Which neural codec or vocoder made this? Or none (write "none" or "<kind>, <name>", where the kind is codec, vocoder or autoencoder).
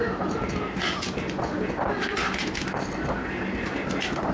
none